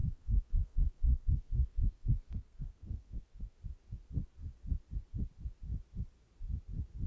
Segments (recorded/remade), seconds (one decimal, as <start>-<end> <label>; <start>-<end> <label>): 0.0-3.6 remade; 3.6-7.1 recorded